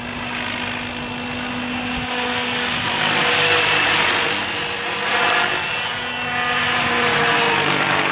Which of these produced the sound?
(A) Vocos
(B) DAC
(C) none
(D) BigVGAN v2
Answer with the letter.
C